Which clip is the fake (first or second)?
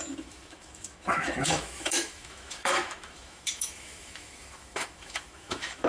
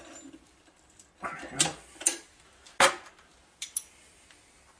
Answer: first